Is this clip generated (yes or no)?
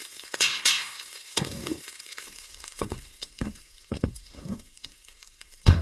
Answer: yes